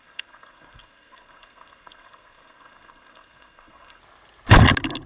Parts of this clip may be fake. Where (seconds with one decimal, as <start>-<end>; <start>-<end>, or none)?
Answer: 0.0-4.0